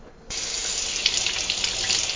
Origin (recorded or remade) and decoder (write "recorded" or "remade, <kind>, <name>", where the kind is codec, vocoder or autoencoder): recorded